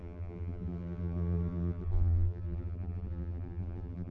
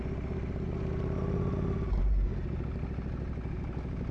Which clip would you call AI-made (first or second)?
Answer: first